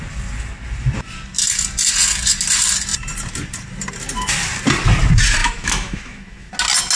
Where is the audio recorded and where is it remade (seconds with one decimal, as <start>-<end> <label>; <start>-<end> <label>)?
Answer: 0.0-5.4 recorded; 5.4-6.5 remade; 6.5-7.0 recorded